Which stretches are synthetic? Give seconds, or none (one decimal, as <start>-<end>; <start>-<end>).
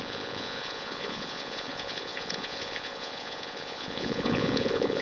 0.0-5.0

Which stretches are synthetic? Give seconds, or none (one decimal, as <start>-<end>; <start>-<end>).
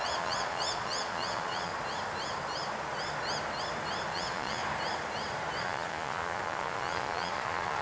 0.0-1.7; 4.1-4.6; 5.6-7.8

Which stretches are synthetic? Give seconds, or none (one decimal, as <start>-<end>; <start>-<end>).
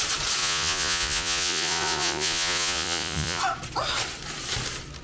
0.4-3.4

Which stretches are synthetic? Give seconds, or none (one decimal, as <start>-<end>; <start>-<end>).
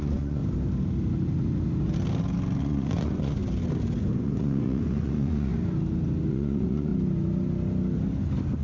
0.0-0.4; 2.6-3.4; 4.0-5.5; 6.3-6.9